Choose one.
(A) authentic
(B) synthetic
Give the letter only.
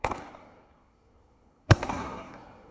B